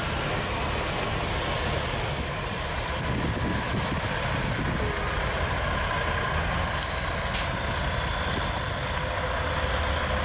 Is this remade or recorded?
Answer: recorded